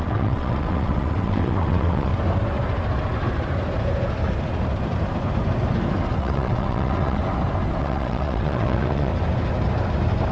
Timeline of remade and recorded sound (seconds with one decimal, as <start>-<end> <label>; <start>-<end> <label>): 0.0-2.1 remade; 2.1-6.2 recorded; 6.2-7.2 remade; 7.2-7.8 recorded; 7.8-9.1 remade; 9.1-10.3 recorded